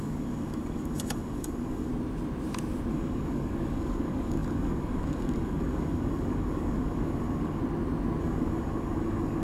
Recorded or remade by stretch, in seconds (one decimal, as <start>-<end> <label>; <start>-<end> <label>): 0.0-1.9 remade; 1.9-2.9 recorded; 2.9-7.6 remade; 7.6-8.2 recorded; 8.2-9.4 remade